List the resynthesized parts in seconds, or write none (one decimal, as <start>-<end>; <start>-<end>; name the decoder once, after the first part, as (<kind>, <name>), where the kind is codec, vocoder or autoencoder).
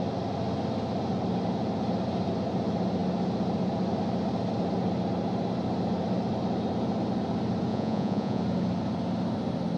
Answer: 7.7-8.4 (vocoder, Vocos)